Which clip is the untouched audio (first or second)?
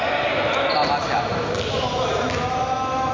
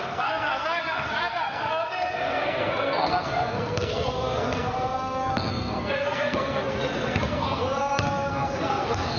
first